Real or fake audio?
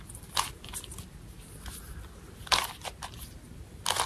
real